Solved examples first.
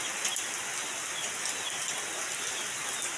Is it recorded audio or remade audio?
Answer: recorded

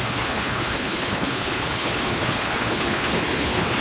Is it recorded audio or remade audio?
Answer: remade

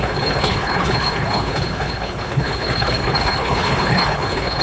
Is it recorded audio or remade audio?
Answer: remade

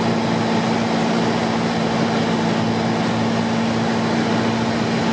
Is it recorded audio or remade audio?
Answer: recorded